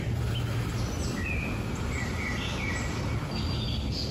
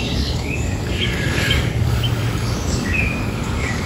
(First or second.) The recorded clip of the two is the first